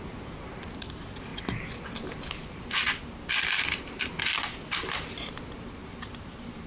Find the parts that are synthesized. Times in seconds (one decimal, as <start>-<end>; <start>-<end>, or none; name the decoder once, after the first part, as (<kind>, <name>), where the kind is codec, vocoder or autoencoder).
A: 5.8-6.7 (vocoder, BigVGAN v2)

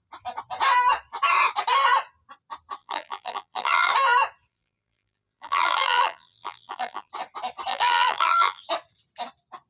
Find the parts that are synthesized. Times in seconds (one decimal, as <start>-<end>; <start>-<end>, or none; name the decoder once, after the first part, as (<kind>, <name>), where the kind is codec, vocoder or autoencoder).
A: 2.8-3.9 (vocoder, BigVGAN v2); 4.5-7.1; 7.7-8.6